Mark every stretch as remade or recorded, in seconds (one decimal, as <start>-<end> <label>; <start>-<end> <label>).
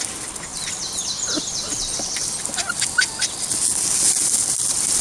0.0-5.0 recorded